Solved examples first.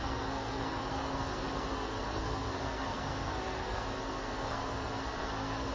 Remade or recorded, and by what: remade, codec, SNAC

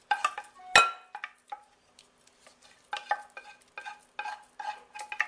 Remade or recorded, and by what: recorded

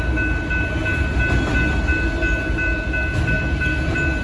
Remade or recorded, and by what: recorded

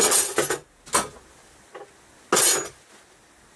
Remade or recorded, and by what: recorded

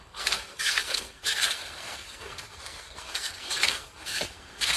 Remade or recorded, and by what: remade, codec, SNAC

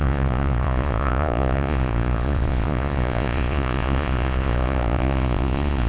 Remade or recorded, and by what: remade, vocoder, Vocos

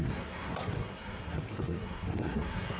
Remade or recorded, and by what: remade, codec, SNAC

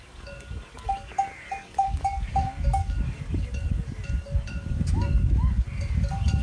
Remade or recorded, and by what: remade, codec, DAC